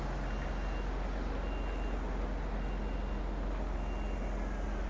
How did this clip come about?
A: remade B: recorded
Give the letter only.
B